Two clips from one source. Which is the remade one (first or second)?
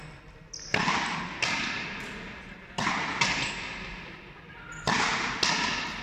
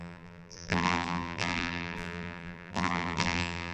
second